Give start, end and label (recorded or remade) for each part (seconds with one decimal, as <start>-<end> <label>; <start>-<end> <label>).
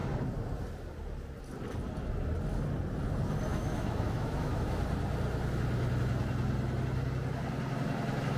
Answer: 0.0-3.5 recorded; 3.5-4.8 remade; 4.8-8.4 recorded